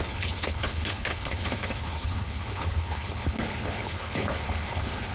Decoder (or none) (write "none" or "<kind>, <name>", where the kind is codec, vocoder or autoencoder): codec, HILCodec